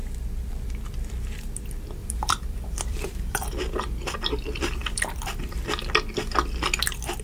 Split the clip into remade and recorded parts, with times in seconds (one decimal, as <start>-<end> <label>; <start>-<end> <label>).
0.0-2.0 recorded; 2.0-3.6 remade; 3.6-4.8 recorded; 4.8-5.4 remade; 5.4-7.2 recorded